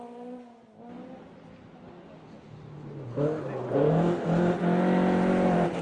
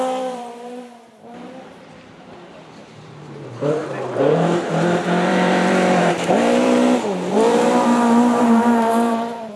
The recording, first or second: first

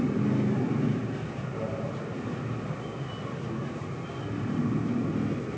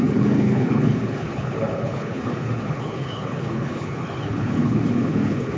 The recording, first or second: first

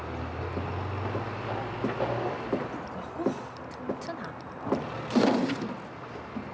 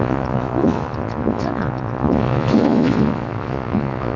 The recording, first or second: first